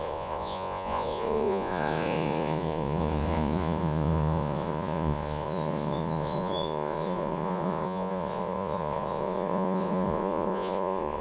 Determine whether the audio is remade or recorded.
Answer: remade